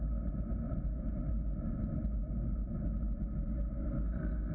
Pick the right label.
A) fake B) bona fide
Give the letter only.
B